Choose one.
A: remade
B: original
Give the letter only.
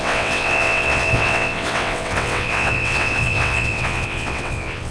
A